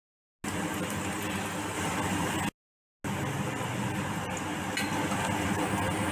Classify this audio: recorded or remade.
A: recorded